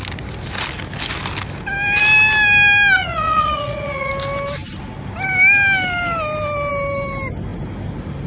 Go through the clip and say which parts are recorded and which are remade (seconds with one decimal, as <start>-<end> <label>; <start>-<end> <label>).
0.0-3.0 recorded; 3.0-4.1 remade; 4.1-8.3 recorded